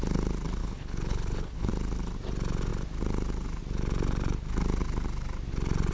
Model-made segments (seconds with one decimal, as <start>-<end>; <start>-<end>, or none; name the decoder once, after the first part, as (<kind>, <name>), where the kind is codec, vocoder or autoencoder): 0.6-1.7 (codec, HILCodec)